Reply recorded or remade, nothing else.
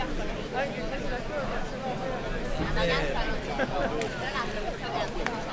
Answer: recorded